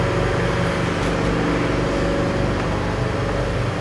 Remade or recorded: recorded